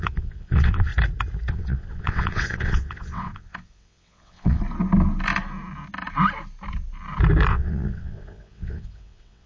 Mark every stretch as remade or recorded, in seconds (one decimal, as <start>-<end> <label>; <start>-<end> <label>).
0.0-0.9 remade; 0.9-1.5 recorded; 1.5-4.6 remade; 4.6-7.5 recorded; 7.5-9.5 remade